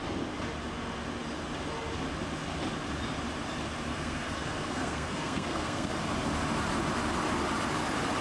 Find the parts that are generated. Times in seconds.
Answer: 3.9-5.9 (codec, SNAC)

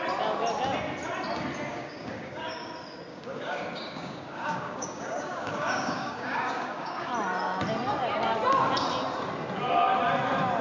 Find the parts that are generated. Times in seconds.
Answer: 1.7-2.7 (codec, DAC); 3.1-7.1

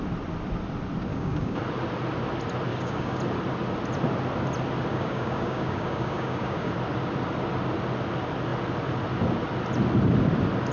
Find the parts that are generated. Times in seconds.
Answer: 1.1-1.6 (codec, DAC); 2.7-3.2; 4.9-6.7

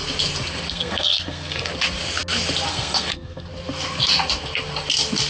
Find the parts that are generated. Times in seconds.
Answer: 0.7-1.7 (codec, SNAC); 2.7-3.5

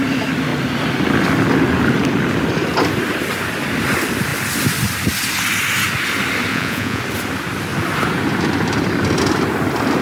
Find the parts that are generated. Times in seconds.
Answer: 6.5-7.0 (vocoder, Vocos)

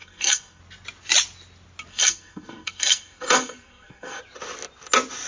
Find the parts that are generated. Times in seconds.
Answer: 0.0-0.6 (codec, SNAC); 1.9-4.2